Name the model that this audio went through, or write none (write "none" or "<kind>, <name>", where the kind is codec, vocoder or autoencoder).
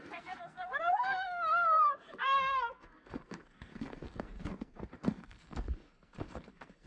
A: codec, SNAC